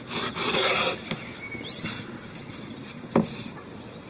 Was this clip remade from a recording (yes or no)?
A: no